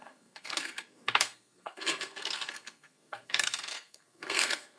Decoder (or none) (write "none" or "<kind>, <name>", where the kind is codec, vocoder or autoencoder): codec, SNAC